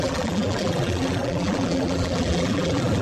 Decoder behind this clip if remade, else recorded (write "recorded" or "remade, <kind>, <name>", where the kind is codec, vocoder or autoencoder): remade, vocoder, BigVGAN v2